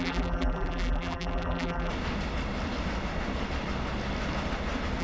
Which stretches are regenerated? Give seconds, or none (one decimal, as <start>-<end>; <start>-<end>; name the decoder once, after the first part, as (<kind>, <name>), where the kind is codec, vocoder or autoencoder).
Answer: 0.0-1.9 (vocoder, BigVGAN v2)